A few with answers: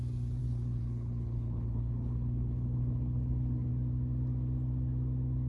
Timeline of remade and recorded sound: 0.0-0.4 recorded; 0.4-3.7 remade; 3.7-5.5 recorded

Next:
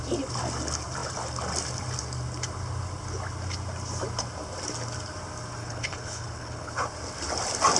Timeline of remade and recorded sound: 0.0-5.6 recorded; 5.6-6.7 remade; 6.7-7.8 recorded

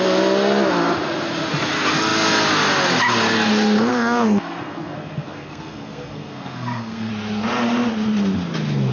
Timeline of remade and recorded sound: 0.0-3.9 recorded; 3.9-7.1 remade; 7.1-8.9 recorded